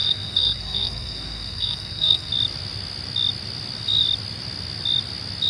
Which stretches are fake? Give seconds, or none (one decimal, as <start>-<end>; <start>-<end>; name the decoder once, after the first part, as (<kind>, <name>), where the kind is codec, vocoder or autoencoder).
0.0-2.3 (codec, SNAC)